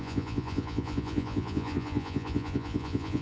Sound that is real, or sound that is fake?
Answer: fake